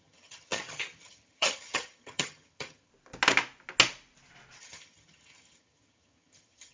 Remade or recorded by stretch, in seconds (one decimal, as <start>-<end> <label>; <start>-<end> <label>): 0.0-2.9 remade; 2.9-4.6 recorded; 4.6-6.7 remade